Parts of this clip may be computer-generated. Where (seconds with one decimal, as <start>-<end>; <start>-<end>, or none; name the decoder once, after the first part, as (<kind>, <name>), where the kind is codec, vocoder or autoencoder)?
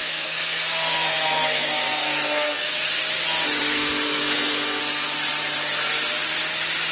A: 0.0-2.9 (codec, SNAC); 3.6-4.8